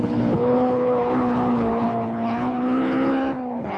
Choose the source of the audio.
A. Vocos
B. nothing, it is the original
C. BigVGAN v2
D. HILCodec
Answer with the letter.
D